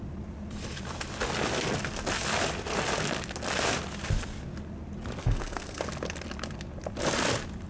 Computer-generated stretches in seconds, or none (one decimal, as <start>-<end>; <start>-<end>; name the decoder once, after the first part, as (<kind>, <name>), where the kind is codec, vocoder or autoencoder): 5.2-5.8 (codec, SNAC)